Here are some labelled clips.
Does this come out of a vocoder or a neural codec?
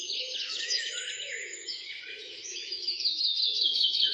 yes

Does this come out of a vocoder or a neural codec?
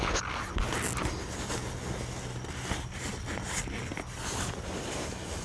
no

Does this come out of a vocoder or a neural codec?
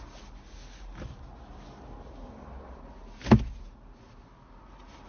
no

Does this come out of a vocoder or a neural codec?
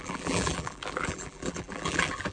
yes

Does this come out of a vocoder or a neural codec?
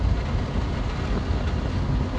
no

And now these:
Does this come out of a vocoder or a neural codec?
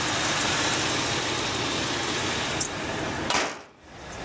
no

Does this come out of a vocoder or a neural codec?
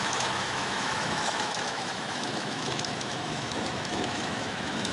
yes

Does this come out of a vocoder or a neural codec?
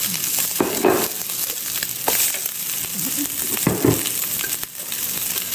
no